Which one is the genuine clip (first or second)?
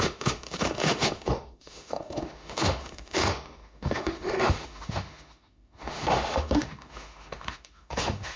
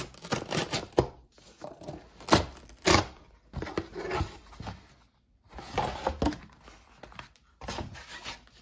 second